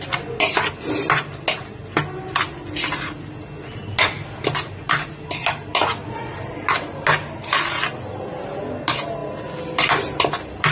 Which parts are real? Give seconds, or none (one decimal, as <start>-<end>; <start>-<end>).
0.0-10.7